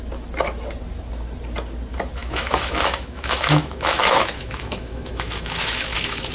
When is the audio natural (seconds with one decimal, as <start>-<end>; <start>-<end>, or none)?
0.0-2.2